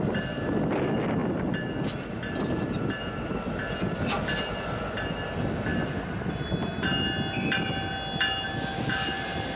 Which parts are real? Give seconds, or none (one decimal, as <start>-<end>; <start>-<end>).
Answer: 0.0-9.6